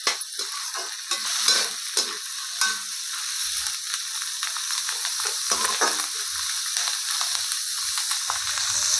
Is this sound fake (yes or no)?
no